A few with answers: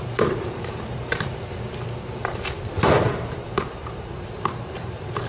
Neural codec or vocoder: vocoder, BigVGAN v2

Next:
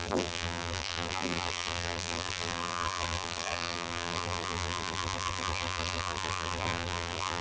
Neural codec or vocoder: vocoder, BigVGAN v2